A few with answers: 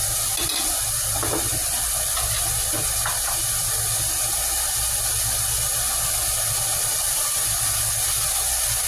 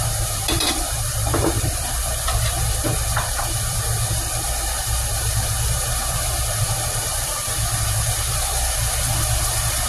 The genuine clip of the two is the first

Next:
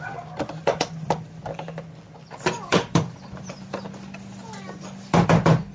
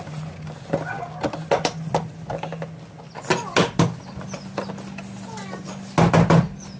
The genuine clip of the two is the second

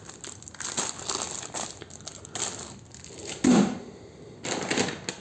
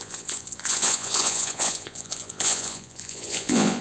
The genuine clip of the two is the first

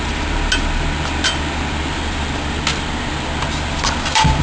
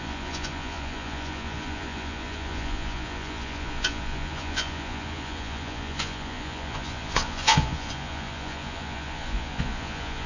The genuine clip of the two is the first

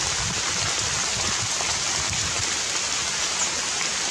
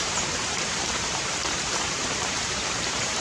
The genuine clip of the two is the first